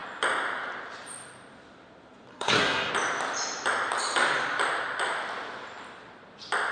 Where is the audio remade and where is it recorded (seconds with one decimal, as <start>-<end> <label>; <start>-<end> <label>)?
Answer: 0.0-2.3 recorded; 2.3-2.9 remade; 2.9-6.7 recorded